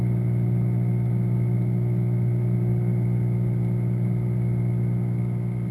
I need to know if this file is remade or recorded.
recorded